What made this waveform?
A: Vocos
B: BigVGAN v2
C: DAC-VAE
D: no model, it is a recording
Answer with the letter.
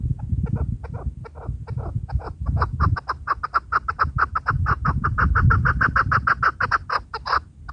D